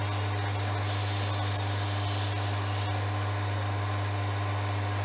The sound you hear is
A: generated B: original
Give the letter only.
B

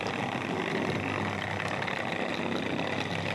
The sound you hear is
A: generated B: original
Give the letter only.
B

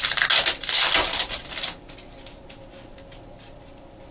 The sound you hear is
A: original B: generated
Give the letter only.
A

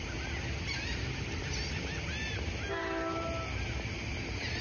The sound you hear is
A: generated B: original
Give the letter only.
B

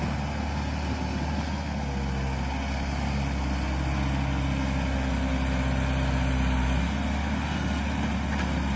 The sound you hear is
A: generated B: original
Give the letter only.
B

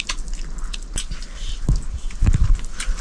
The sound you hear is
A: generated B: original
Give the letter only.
B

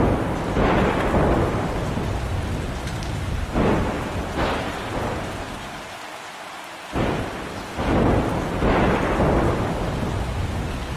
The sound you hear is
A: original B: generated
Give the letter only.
A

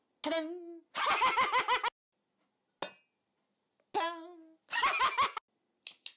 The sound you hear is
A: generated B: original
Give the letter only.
B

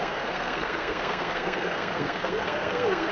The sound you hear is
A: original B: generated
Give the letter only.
B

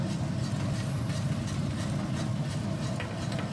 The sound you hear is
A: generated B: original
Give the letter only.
B